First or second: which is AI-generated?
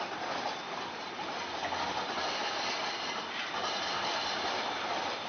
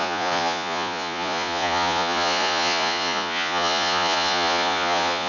second